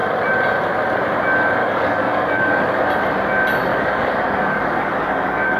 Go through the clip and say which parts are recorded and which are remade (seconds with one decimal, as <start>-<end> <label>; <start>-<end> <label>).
0.0-1.6 recorded; 1.6-2.8 remade; 2.8-3.7 recorded; 3.7-5.6 remade